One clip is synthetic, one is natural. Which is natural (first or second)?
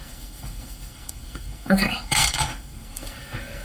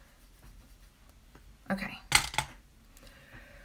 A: second